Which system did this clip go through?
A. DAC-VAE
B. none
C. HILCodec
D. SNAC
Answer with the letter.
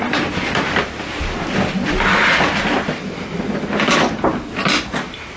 B